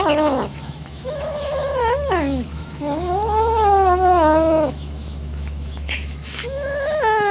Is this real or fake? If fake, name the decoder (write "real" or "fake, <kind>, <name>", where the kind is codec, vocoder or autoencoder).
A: fake, autoencoder, DAC-VAE